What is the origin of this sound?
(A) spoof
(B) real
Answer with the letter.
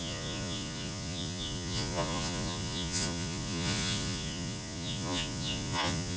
A